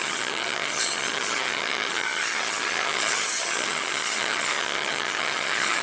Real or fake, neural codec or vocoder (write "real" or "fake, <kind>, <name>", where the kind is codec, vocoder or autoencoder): fake, vocoder, HiFi-GAN